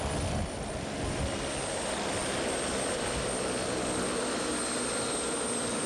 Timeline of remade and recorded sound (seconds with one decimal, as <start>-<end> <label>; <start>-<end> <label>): 0.0-5.9 recorded